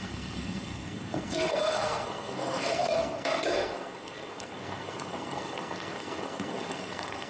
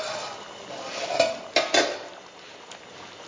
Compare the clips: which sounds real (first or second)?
second